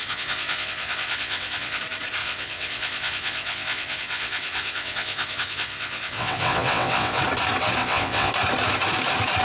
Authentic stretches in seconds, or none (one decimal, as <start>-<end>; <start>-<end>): 1.8-2.2; 7.2-7.8; 8.3-9.4